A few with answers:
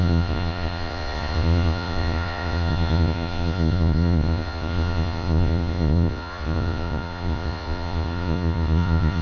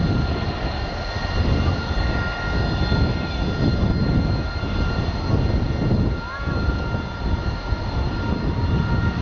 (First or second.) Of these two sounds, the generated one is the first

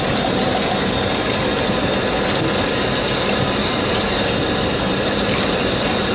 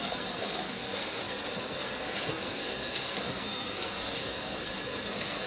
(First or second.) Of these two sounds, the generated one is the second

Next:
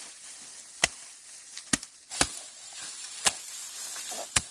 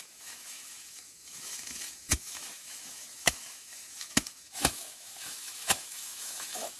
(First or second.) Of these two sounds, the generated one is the second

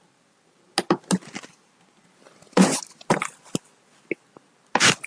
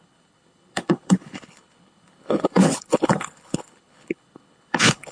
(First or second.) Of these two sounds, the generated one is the second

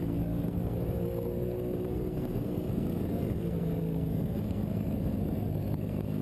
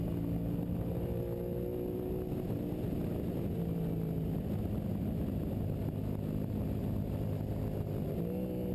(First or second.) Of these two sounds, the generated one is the first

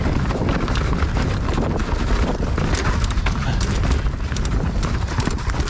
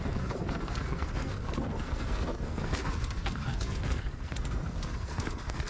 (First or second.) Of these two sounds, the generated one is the second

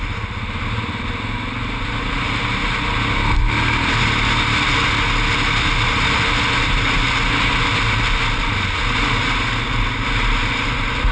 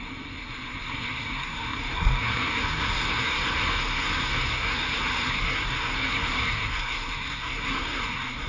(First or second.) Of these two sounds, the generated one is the second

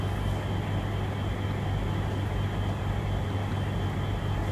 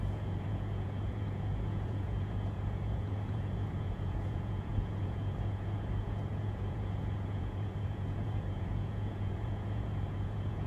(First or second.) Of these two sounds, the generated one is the second